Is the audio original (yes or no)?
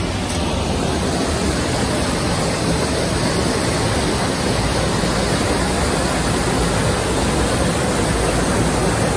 yes